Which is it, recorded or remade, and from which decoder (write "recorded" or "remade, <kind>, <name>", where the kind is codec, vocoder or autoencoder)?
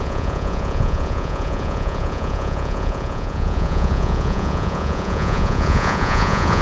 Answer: remade, vocoder, Vocos